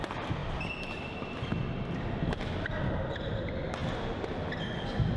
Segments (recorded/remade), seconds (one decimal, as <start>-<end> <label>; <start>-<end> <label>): 0.0-5.2 recorded